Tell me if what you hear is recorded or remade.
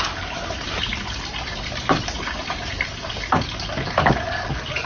recorded